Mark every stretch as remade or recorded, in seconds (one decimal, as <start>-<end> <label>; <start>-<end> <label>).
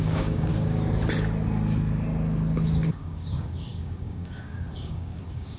0.0-0.5 remade; 0.5-2.9 recorded; 2.9-5.6 remade